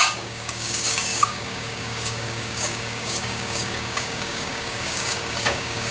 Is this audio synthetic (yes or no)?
yes